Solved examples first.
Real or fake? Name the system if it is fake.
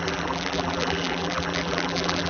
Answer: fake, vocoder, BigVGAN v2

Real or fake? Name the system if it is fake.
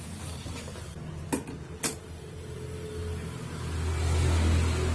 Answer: real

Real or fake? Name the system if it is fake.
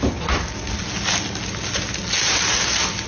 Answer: real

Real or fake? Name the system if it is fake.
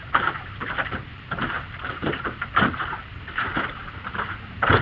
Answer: fake, vocoder, BigVGAN v2